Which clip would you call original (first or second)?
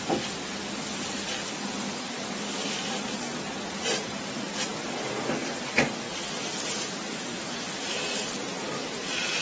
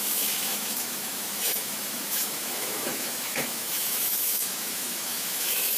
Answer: first